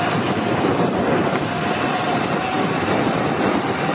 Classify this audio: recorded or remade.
remade